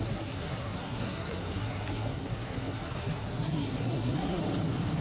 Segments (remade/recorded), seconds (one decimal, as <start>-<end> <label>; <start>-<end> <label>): 0.0-4.4 remade; 4.4-5.0 recorded